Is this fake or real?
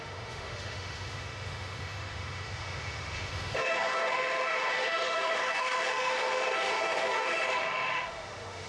fake